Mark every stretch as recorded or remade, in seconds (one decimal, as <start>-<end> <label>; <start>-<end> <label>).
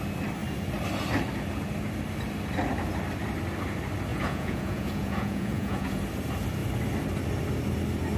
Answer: 0.0-4.1 recorded; 4.1-6.0 remade; 6.0-8.2 recorded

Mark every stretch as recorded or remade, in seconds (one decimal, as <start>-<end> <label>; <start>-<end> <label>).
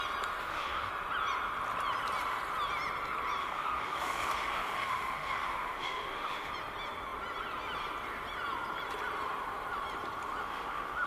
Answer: 0.0-0.4 recorded; 0.4-0.9 remade; 0.9-3.4 recorded; 3.4-6.5 remade; 6.5-10.4 recorded; 10.4-11.1 remade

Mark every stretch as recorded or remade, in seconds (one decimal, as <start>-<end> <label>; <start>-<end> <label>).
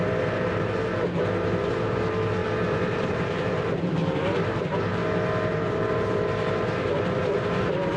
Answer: 0.0-5.0 remade; 5.0-5.5 recorded; 5.5-8.0 remade